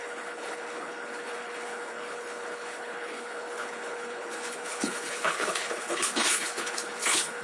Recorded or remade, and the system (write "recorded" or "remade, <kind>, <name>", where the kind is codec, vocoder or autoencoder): remade, codec, HILCodec